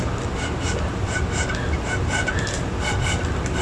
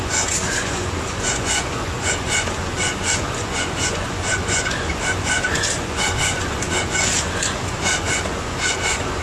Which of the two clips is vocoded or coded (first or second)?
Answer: second